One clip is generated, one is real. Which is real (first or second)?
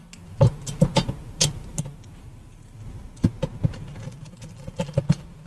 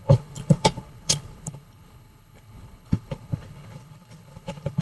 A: first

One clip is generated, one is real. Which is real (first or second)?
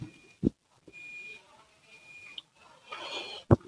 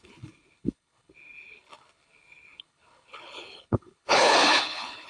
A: first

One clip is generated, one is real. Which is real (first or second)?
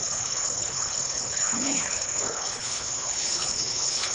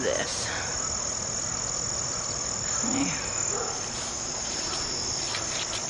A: second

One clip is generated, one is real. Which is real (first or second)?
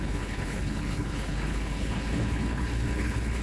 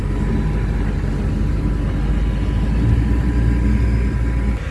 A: second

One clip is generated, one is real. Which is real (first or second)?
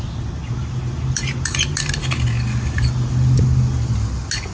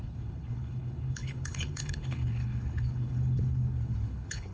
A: first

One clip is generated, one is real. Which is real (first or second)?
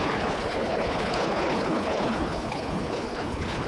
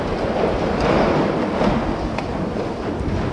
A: second